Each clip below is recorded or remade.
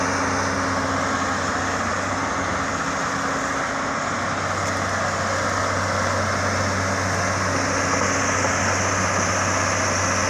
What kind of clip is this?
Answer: recorded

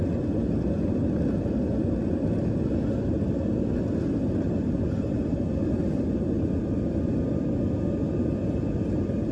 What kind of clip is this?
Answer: recorded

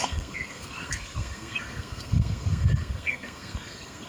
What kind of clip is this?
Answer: remade